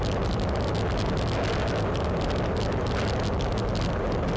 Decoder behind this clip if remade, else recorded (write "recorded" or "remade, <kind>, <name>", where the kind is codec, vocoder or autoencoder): recorded